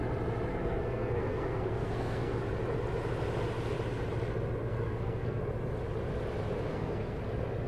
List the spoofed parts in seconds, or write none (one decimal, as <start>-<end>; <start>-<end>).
0.5-2.4; 4.6-5.4; 6.7-7.2